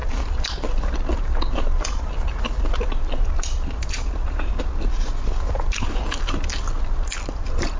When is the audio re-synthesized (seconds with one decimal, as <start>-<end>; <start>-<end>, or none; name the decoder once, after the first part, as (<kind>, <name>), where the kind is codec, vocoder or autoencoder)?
none